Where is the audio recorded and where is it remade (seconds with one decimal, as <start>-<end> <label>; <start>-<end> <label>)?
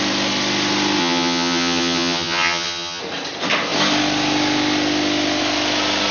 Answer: 0.0-1.0 recorded; 1.0-3.0 remade; 3.0-6.1 recorded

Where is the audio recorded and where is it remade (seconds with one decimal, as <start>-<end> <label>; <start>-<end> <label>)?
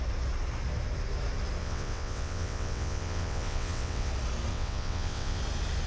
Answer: 0.0-1.6 recorded; 1.6-4.1 remade; 4.1-4.5 recorded; 4.5-5.4 remade; 5.4-5.9 recorded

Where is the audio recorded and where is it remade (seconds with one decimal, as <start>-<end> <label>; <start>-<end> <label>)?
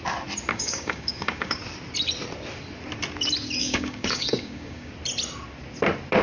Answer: 0.0-0.5 recorded; 0.5-1.6 remade; 1.6-3.6 recorded; 3.6-4.9 remade; 4.9-6.2 recorded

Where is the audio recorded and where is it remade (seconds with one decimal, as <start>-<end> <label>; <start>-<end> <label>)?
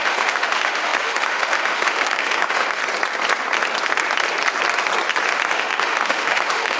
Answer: 0.0-2.8 remade; 2.8-5.5 recorded; 5.5-6.8 remade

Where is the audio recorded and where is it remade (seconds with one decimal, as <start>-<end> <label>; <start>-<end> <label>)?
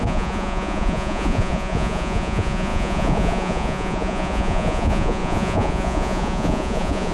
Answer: 0.0-7.1 remade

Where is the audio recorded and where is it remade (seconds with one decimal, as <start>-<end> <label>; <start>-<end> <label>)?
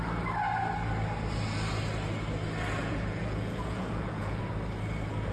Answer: 0.0-2.8 recorded; 2.8-4.4 remade; 4.4-5.3 recorded